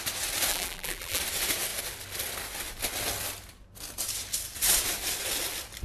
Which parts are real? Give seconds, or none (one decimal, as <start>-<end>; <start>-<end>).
0.0-0.5; 1.2-5.8